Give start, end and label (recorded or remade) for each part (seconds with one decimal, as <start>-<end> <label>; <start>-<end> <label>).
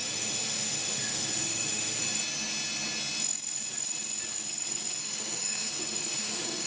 0.0-2.0 remade; 2.0-5.0 recorded; 5.0-5.7 remade; 5.7-6.2 recorded; 6.2-6.7 remade